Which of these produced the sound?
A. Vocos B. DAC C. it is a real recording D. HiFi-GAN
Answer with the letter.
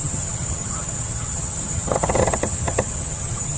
D